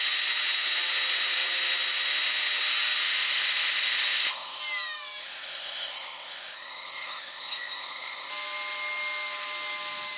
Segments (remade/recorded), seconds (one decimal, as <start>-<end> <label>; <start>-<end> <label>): 0.0-3.0 recorded; 3.0-4.6 remade; 4.6-5.2 recorded; 5.2-8.3 remade; 8.3-10.2 recorded